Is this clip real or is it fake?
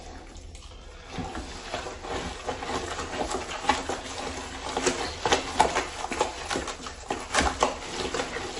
real